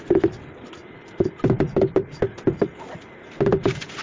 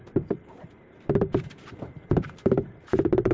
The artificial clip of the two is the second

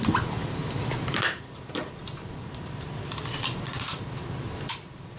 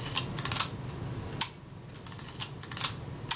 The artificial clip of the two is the first